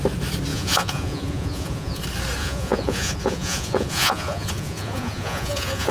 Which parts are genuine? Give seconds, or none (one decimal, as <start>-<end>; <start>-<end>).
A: 0.0-0.5; 2.0-2.4